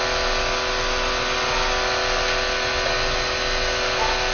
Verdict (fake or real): real